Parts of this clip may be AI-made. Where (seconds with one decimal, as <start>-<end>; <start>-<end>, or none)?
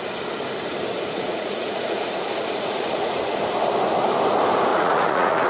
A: 0.9-3.2; 4.7-5.5